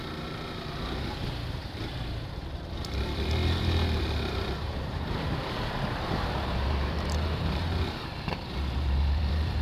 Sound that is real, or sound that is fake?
fake